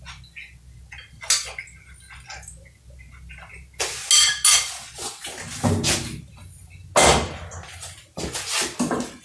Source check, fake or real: real